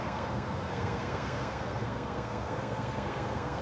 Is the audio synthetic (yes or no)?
yes